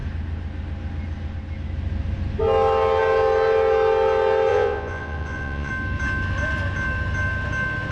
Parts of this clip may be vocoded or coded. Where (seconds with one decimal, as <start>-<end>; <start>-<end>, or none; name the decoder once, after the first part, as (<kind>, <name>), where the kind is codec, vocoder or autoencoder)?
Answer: 4.5-5.7 (vocoder, Vocos)